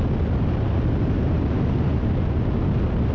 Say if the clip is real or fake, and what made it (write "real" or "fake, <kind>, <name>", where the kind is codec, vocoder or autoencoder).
real